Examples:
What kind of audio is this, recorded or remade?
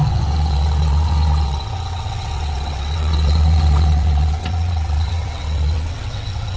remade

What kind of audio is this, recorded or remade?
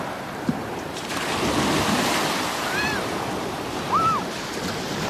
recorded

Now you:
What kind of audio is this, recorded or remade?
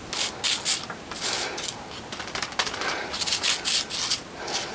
recorded